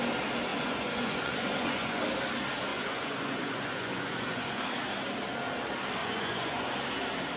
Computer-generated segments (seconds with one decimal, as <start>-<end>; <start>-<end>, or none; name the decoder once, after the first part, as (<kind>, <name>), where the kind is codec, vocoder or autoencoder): 0.5-2.0 (vocoder, Vocos); 2.7-4.6; 6.0-6.7